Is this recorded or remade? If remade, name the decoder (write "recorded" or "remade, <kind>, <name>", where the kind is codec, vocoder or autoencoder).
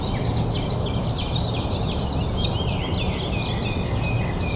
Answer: recorded